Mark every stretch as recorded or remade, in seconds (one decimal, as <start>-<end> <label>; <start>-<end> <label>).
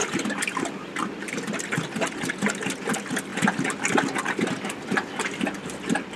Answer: 0.0-6.2 recorded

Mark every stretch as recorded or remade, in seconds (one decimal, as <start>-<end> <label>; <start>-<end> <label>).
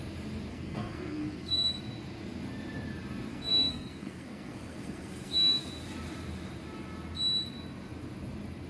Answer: 0.0-0.5 recorded; 0.5-1.7 remade; 1.7-3.3 recorded; 3.3-5.7 remade; 5.7-8.7 recorded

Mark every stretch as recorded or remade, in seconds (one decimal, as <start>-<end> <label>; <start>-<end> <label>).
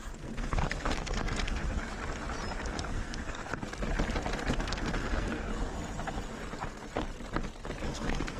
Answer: 0.0-1.9 remade; 1.9-2.7 recorded; 2.7-3.5 remade; 3.5-4.5 recorded; 4.5-5.5 remade; 5.5-7.8 recorded; 7.8-8.4 remade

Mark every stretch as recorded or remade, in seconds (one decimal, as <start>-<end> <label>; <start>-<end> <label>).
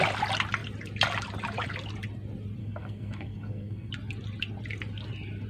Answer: 0.0-2.6 recorded; 2.6-3.9 remade; 3.9-5.5 recorded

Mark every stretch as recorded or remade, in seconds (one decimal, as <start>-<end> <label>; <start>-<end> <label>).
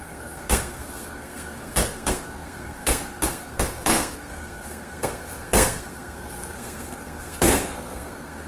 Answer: 0.0-8.5 remade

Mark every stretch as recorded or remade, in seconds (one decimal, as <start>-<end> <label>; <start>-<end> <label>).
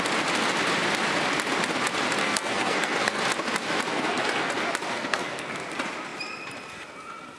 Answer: 0.0-2.2 recorded; 2.2-3.2 remade; 3.2-3.9 recorded; 3.9-4.5 remade; 4.5-4.9 recorded; 4.9-5.5 remade; 5.5-7.4 recorded